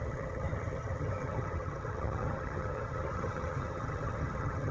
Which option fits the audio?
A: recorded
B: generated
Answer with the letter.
B